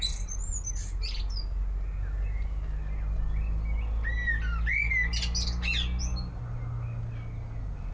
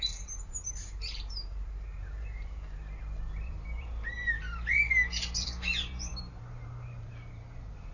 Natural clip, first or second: first